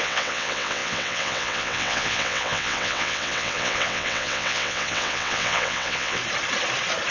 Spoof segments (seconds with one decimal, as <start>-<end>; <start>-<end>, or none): 0.0-6.2